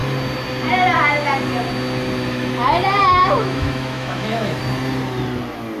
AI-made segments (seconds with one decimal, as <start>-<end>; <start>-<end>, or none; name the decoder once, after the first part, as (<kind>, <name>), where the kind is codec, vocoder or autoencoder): 3.0-4.6 (autoencoder, DAC-VAE)